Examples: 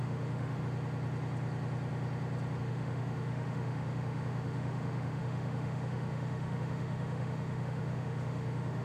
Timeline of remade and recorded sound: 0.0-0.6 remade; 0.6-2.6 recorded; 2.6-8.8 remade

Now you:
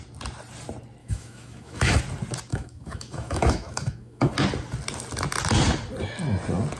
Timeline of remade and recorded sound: 0.0-1.0 recorded; 1.0-2.0 remade; 2.0-2.5 recorded; 2.5-4.3 remade; 4.3-6.8 recorded